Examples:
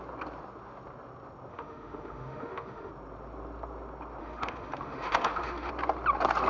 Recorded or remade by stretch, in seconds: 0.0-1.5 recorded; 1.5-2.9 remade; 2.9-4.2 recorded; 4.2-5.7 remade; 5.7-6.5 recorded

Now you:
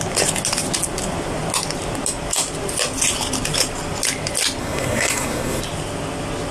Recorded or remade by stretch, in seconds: 0.0-4.6 recorded; 4.6-5.6 remade; 5.6-6.5 recorded